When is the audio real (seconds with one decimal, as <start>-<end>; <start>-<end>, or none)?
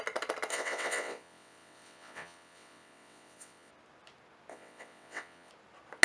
0.0-0.5; 3.7-4.5; 5.5-6.0